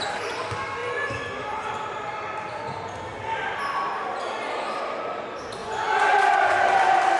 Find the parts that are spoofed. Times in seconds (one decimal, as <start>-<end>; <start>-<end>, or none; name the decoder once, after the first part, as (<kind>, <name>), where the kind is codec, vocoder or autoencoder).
5.6-6.2 (vocoder, Vocos)